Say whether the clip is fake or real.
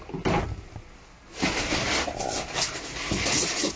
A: real